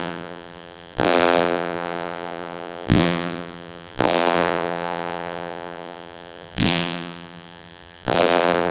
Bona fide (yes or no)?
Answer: no